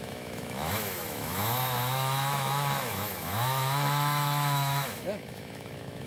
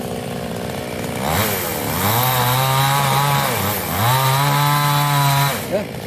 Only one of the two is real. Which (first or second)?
second